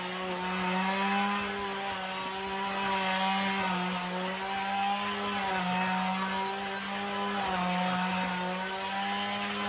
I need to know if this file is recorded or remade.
recorded